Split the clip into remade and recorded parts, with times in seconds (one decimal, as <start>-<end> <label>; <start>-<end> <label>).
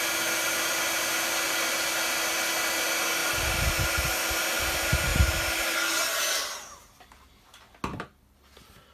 0.0-8.9 recorded